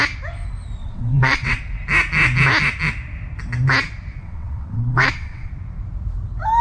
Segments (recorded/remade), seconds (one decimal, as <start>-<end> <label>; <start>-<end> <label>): 0.0-0.8 recorded; 0.8-1.6 remade; 1.6-4.2 recorded; 4.2-5.5 remade; 5.5-6.6 recorded